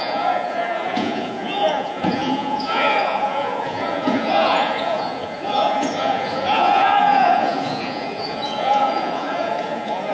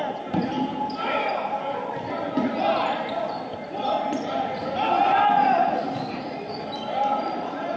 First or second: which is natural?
second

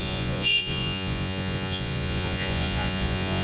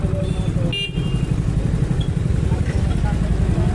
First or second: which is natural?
second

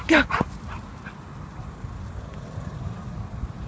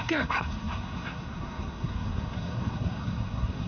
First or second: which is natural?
first